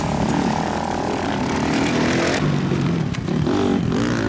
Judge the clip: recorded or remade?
recorded